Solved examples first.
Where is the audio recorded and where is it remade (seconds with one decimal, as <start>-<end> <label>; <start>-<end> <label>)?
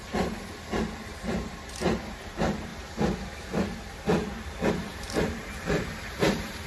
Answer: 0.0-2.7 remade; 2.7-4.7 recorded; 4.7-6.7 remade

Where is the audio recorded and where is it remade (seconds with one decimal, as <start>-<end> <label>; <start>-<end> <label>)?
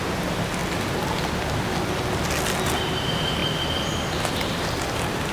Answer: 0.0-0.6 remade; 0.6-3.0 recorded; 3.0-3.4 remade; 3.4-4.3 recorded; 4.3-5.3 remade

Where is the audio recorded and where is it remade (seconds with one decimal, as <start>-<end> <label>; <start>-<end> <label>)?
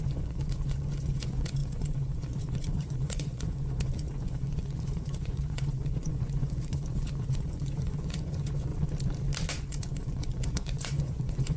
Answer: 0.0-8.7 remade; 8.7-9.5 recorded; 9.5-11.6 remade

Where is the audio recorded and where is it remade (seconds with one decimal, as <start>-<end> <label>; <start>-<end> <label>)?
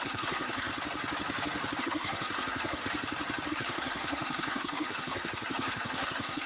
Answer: 0.0-0.7 remade; 0.7-1.8 recorded; 1.8-2.8 remade; 2.8-3.5 recorded; 3.5-6.5 remade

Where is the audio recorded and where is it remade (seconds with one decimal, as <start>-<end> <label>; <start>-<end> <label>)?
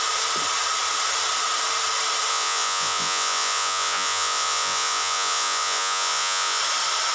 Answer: 0.0-2.3 recorded; 2.3-6.6 remade; 6.6-7.1 recorded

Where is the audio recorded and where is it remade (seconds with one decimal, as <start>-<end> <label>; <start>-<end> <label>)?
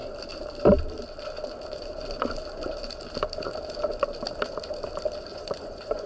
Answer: 0.0-5.3 recorded; 5.3-6.1 remade